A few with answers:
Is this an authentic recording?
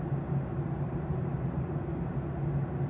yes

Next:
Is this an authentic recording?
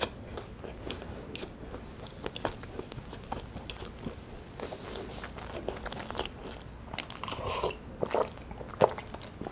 yes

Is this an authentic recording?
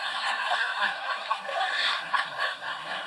no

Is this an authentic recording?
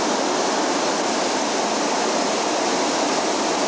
yes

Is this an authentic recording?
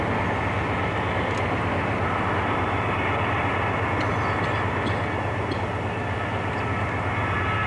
yes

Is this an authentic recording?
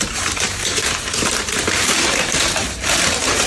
no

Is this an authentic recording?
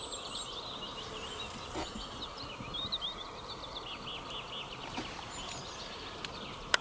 yes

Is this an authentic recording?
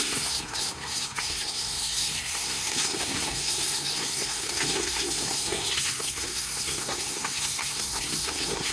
no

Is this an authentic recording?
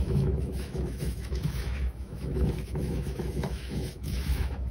no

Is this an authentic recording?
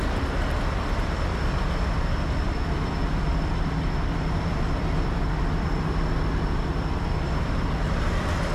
no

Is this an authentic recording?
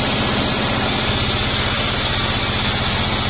yes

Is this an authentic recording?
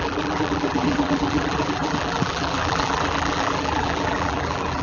no